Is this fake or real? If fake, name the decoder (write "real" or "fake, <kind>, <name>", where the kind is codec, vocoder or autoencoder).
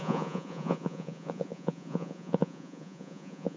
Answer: fake, vocoder, Vocos